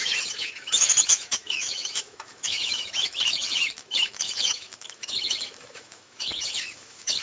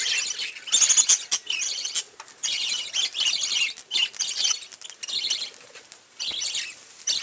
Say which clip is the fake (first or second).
first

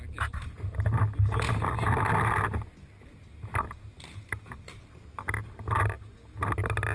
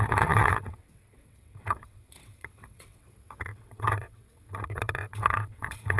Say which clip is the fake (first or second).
second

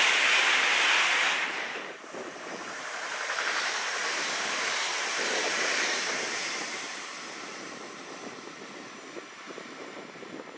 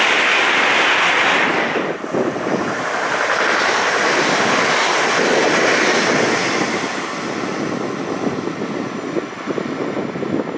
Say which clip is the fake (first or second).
first